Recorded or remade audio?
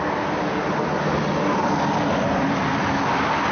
recorded